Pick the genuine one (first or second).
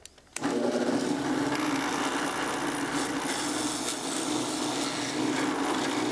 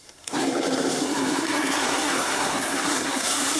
first